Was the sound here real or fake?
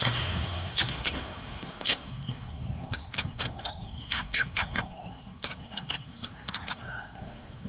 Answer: fake